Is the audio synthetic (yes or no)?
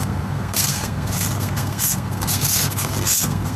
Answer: yes